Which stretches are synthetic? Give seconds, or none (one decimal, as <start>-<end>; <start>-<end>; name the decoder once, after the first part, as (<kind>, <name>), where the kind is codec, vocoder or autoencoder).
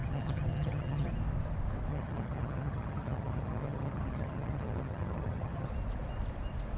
0.0-1.1 (vocoder, HiFi-GAN); 1.9-5.7